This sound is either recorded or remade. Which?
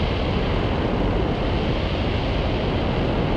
recorded